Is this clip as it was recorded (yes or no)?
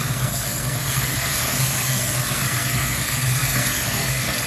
no